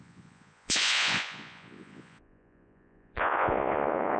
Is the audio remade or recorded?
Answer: remade